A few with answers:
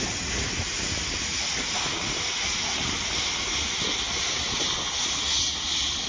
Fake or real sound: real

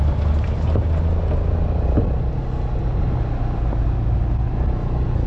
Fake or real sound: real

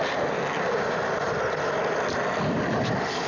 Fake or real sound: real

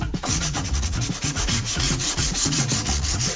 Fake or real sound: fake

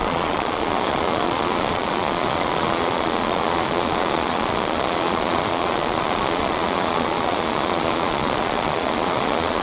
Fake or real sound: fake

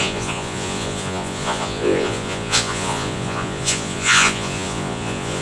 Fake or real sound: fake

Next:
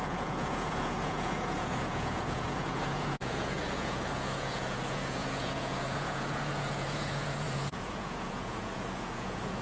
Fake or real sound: fake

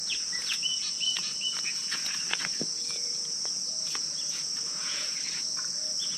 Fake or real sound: fake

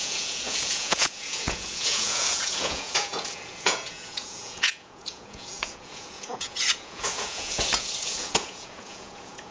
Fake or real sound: fake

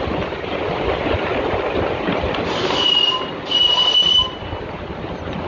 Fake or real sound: real